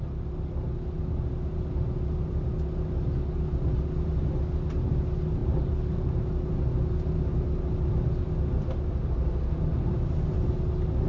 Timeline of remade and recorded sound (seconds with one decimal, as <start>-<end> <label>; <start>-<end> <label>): 0.0-5.4 recorded; 5.4-6.2 remade; 6.2-9.7 recorded; 9.7-10.3 remade; 10.3-11.1 recorded